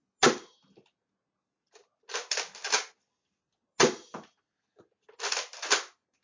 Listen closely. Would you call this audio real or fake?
real